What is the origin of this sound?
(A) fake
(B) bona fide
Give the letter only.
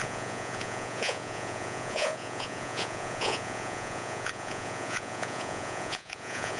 A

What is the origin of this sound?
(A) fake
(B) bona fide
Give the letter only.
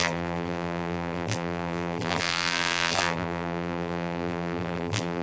A